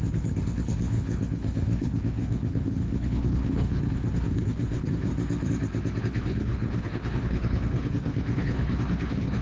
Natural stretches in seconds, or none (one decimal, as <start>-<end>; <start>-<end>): 5.1-6.0